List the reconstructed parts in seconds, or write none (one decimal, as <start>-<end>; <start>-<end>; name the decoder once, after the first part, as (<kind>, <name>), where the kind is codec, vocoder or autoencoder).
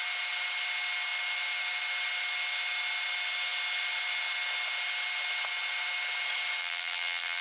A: 6.6-7.4 (vocoder, BigVGAN v2)